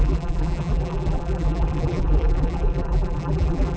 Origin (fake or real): fake